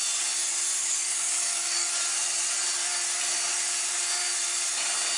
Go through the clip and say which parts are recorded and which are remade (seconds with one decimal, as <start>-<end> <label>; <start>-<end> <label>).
0.0-0.8 recorded; 0.8-1.9 remade; 1.9-5.2 recorded